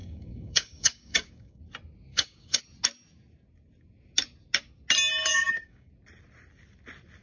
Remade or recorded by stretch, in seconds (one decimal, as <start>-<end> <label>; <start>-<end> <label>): 0.0-1.6 remade; 1.6-2.1 recorded; 2.1-2.6 remade; 2.6-5.3 recorded; 5.3-5.9 remade; 5.9-7.2 recorded